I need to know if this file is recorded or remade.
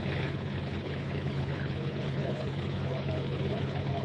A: remade